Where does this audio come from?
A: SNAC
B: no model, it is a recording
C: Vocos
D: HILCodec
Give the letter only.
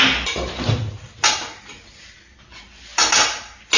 B